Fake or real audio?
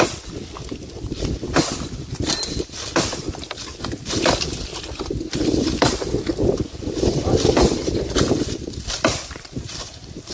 fake